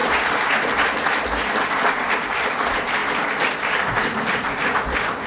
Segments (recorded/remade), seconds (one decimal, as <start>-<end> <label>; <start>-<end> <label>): 0.0-5.3 recorded